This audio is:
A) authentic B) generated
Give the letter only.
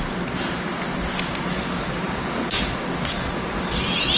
A